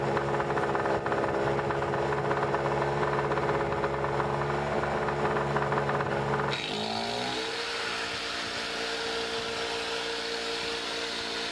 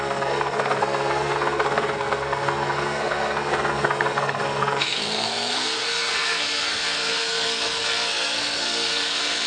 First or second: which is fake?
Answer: second